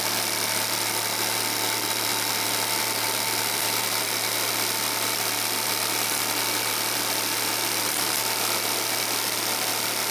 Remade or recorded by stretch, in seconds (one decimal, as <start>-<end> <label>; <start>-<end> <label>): 0.0-10.1 recorded